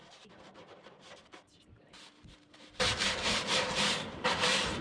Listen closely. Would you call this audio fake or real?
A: fake